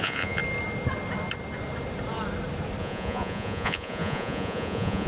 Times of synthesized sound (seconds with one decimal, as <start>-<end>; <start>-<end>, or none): 0.0-0.4; 2.8-5.1